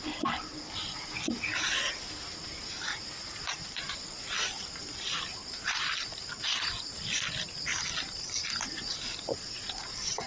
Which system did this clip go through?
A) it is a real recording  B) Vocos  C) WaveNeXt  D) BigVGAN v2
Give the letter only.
A